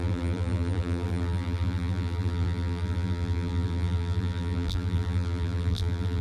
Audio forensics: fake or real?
fake